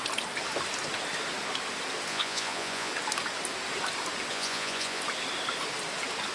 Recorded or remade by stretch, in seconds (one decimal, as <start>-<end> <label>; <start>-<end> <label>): 0.0-2.1 recorded; 2.1-2.9 remade; 2.9-4.3 recorded; 4.3-5.0 remade; 5.0-6.3 recorded